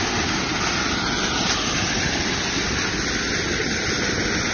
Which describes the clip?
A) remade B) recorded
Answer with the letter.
B